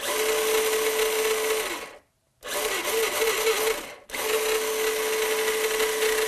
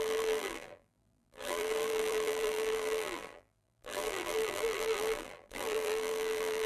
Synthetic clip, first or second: second